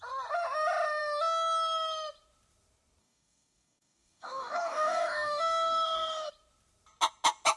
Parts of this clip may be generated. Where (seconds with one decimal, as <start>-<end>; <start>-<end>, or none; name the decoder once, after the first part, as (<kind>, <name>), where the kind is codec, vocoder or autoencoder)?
3.0-6.3 (codec, DAC)